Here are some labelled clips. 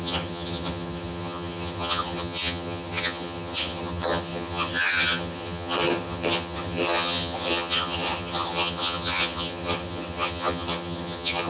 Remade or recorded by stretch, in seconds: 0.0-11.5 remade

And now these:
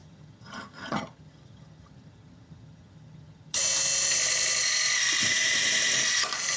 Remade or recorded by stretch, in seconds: 0.0-3.6 remade; 3.6-6.6 recorded

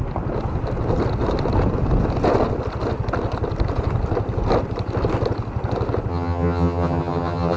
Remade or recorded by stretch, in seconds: 0.0-6.1 recorded; 6.1-7.6 remade

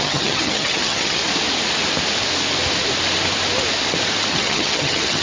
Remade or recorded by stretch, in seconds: 0.0-1.2 remade; 1.2-4.3 recorded; 4.3-5.2 remade

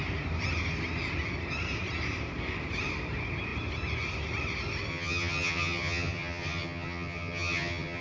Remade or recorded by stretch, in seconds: 0.0-4.9 recorded; 4.9-8.0 remade

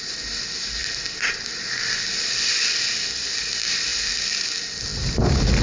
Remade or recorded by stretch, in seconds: 0.0-5.6 recorded